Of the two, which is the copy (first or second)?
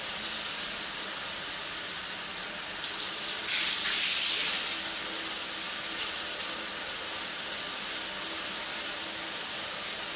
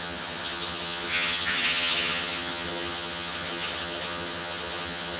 second